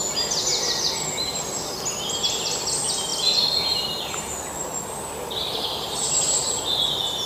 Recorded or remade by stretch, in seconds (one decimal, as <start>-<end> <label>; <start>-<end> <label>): 0.0-3.1 recorded; 3.1-3.9 remade; 3.9-5.4 recorded; 5.4-6.1 remade; 6.1-7.3 recorded